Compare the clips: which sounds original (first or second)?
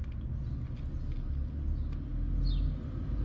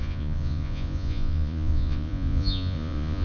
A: first